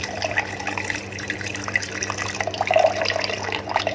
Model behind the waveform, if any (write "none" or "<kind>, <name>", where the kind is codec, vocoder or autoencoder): none